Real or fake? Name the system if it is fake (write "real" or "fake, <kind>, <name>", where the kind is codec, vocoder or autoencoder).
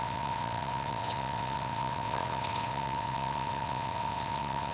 fake, vocoder, WaveNeXt